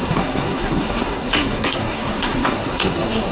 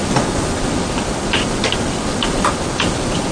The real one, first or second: second